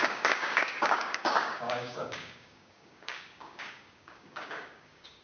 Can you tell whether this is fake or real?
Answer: fake